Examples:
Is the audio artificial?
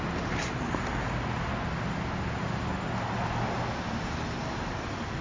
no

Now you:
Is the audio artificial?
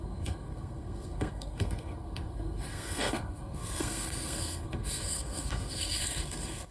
yes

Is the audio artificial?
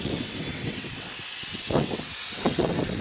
yes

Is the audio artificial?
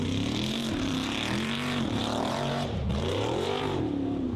yes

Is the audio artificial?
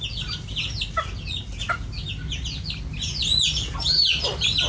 no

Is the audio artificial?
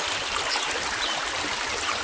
no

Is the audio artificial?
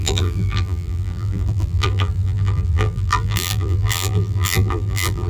yes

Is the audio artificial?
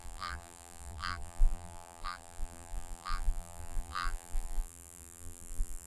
yes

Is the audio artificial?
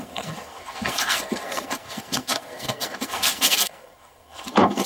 yes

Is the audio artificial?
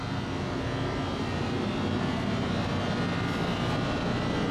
no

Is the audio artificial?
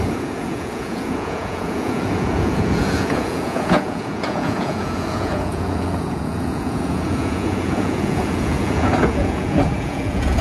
yes